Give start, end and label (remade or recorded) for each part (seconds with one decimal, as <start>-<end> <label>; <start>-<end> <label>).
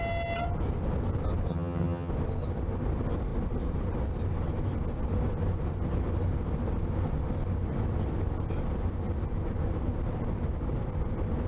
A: 0.0-1.5 recorded; 1.5-2.1 remade; 2.1-11.5 recorded